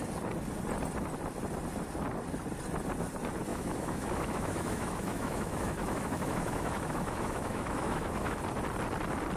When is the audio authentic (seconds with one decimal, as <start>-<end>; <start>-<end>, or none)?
0.0-3.5; 8.4-9.4

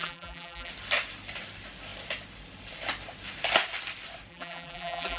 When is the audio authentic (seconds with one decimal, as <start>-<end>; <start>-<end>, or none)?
0.7-4.3

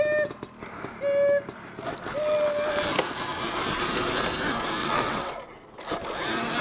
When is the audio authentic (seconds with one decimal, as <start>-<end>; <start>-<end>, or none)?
0.0-4.8; 5.3-6.6

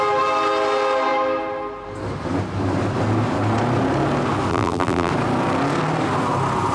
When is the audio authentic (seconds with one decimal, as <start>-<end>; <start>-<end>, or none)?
0.0-4.5; 5.1-6.7

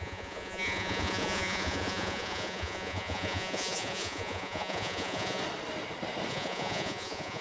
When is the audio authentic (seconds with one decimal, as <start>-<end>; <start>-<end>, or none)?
5.4-6.3

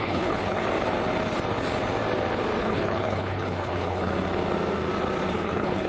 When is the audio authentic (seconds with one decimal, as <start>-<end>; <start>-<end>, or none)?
0.6-2.6; 4.1-5.3

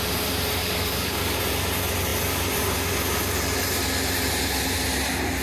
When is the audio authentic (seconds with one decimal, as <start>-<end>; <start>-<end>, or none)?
0.0-0.6; 1.4-5.4

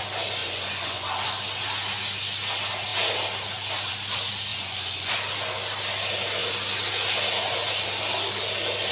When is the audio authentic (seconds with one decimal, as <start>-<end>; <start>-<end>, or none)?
0.0-0.4; 1.3-4.5; 5.1-8.9